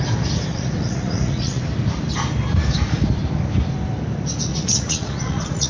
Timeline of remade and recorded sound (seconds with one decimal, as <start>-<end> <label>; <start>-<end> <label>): 0.0-0.5 recorded; 0.5-1.6 remade; 1.6-4.5 recorded; 4.5-5.7 remade